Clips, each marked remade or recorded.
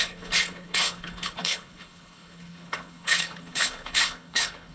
remade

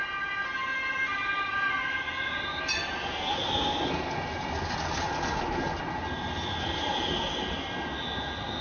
recorded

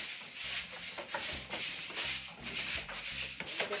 remade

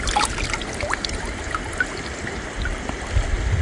recorded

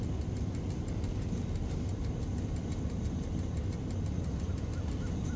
recorded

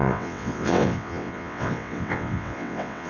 remade